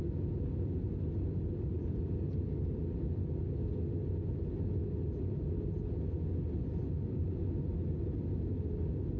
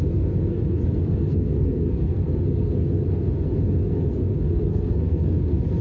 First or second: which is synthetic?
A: second